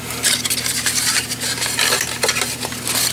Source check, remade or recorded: recorded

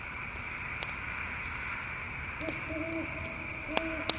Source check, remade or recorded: recorded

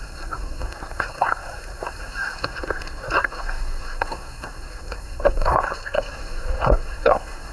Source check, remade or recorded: remade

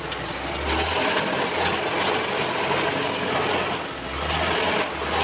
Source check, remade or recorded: recorded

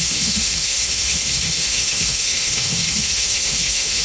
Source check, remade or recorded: remade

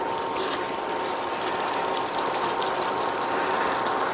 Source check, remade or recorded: remade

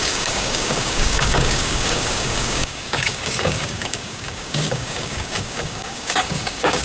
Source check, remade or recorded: remade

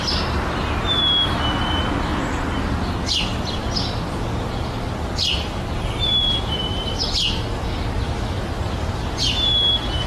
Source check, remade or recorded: recorded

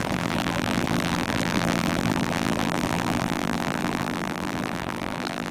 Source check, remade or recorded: remade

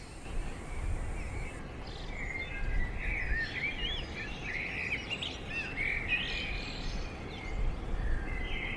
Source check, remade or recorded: recorded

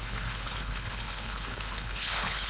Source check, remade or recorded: remade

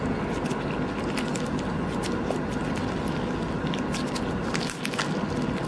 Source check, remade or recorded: recorded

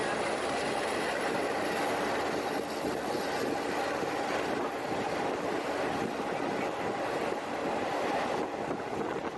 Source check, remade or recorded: recorded